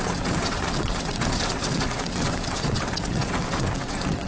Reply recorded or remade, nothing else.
remade